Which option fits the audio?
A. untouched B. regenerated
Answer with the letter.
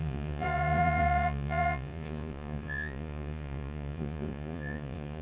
B